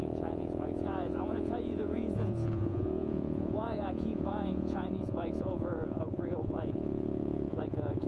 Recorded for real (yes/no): no